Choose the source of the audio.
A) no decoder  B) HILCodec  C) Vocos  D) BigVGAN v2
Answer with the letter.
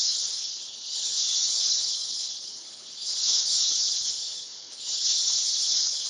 B